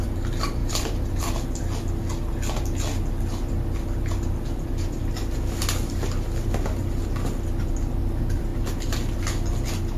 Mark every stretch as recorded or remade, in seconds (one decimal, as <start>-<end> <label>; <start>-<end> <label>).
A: 0.0-0.6 recorded; 0.6-1.3 remade; 1.3-10.0 recorded